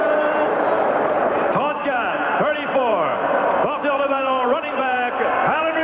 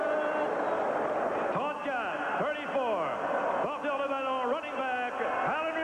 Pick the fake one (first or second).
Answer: first